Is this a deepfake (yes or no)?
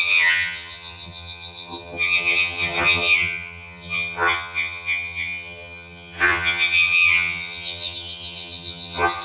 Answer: yes